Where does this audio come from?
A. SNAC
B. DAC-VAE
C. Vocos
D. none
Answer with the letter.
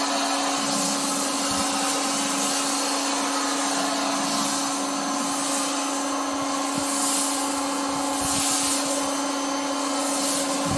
D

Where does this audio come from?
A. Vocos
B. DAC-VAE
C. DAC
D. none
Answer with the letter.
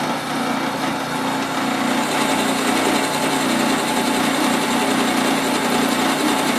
D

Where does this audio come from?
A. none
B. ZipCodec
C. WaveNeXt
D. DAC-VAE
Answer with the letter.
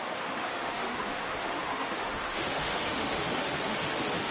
D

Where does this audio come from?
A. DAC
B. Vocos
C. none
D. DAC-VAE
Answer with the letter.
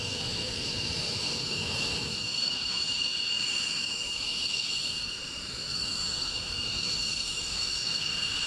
D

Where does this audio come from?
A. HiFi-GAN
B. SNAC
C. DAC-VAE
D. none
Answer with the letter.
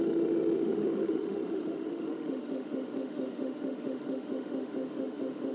C